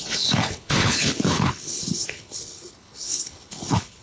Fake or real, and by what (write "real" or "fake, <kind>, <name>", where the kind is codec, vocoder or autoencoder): fake, codec, HILCodec